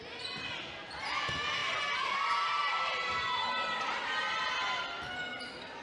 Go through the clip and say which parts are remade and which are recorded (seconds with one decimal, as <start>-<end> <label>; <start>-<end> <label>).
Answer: 0.0-5.8 recorded